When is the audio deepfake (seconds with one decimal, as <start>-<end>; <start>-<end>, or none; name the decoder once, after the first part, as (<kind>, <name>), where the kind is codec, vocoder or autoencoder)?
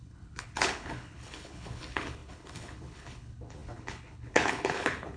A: 0.0-5.2 (codec, HILCodec)